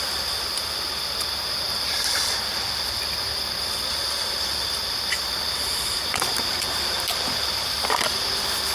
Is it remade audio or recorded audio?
remade